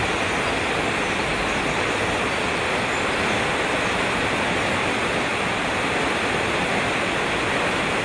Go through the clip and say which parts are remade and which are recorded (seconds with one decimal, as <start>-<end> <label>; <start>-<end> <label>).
0.0-8.0 recorded